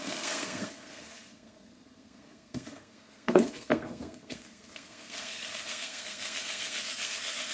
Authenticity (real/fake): fake